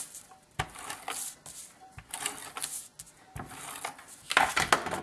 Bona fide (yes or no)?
yes